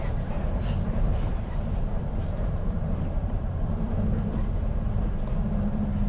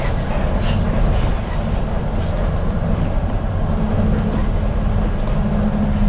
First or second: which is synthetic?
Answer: first